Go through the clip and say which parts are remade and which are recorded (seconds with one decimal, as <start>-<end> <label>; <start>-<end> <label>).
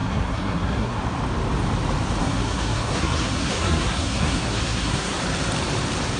0.0-1.0 remade; 1.0-2.2 recorded; 2.2-5.2 remade; 5.2-6.2 recorded